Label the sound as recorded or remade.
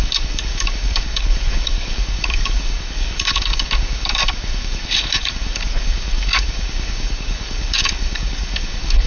remade